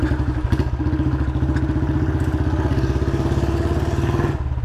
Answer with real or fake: real